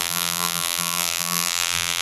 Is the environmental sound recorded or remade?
remade